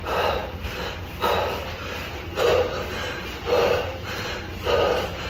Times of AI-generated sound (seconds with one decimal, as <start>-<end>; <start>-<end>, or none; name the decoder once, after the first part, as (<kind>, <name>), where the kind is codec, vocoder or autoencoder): none